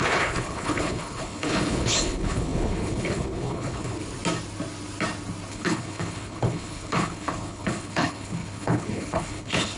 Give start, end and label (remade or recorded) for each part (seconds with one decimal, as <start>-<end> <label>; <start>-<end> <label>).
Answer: 0.0-4.0 remade; 4.0-5.5 recorded; 5.5-9.8 remade